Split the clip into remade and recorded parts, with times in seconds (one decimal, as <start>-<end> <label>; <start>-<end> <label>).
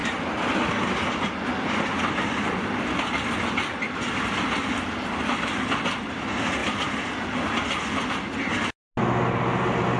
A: 0.0-6.6 recorded; 6.6-7.9 remade; 7.9-10.0 recorded